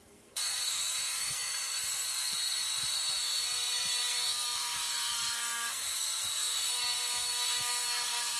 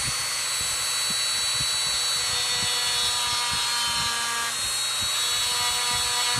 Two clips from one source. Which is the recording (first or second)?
second